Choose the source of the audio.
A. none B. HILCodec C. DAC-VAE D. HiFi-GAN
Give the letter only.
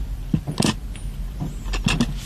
A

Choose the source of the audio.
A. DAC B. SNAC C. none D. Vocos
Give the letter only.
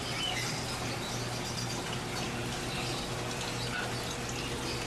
C